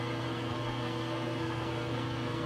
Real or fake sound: fake